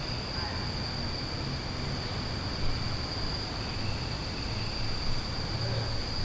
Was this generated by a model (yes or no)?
no